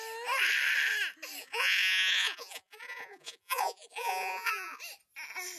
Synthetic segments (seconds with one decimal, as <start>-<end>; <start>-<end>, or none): 1.4-4.8